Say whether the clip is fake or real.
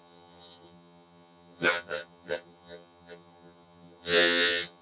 fake